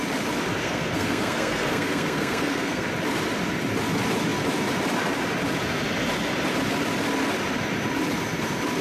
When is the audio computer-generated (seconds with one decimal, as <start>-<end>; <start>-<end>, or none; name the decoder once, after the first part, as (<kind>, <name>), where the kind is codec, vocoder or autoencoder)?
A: 0.6-2.9 (codec, SNAC)